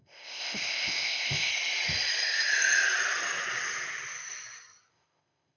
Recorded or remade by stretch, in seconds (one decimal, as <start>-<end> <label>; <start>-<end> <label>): 0.0-1.5 remade; 1.5-4.9 recorded; 4.9-5.6 remade